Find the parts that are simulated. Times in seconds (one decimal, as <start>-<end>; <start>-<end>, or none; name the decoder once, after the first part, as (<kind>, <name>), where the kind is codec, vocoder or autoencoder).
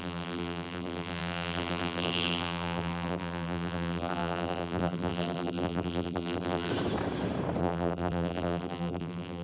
0.0-6.7 (vocoder, BigVGAN v2); 7.6-9.4